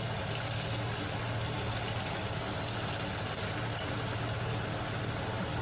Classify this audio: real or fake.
real